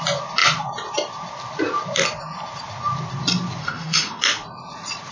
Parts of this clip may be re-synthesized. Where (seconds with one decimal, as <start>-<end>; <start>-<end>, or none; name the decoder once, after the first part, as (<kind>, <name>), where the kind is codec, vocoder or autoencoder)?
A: 3.6-4.2 (autoencoder, DAC-VAE)